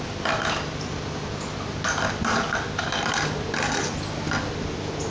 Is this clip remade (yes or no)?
no